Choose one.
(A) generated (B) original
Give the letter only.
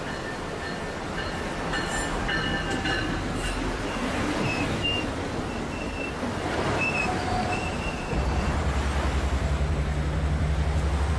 B